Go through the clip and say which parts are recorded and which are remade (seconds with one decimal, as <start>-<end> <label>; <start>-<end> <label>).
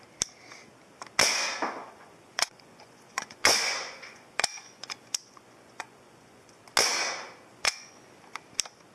0.0-1.8 recorded; 1.8-6.6 remade; 6.6-7.5 recorded; 7.5-8.2 remade; 8.2-8.9 recorded